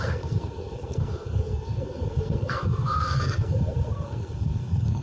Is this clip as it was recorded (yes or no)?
no